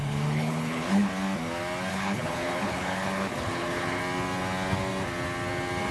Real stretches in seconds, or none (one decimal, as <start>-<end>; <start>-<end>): 1.1-1.9; 4.0-5.9